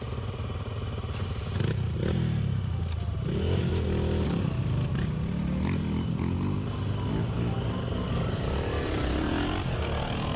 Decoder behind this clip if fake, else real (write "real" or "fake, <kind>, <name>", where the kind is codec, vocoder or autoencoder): real